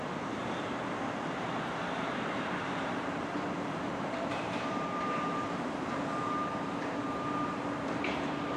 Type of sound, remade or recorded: remade